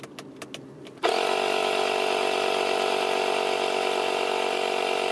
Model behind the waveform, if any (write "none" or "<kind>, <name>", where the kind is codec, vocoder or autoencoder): none